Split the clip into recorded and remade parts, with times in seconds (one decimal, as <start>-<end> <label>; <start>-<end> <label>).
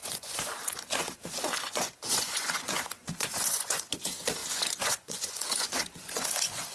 0.0-6.7 remade